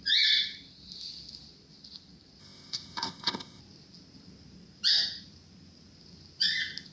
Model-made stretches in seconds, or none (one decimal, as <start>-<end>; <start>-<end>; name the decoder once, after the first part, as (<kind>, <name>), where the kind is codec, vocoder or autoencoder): 2.4-3.6 (codec, ZipCodec)